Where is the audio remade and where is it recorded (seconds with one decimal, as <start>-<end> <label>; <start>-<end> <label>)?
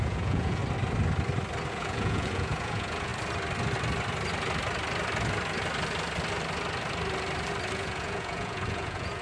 0.0-0.6 remade; 0.6-1.7 recorded; 1.7-3.1 remade; 3.1-7.7 recorded; 7.7-9.2 remade